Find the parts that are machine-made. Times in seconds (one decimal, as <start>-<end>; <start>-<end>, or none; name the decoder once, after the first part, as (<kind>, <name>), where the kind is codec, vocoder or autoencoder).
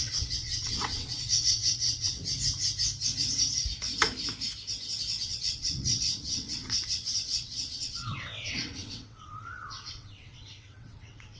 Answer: 0.0-2.2 (vocoder, WaveNeXt); 5.2-11.4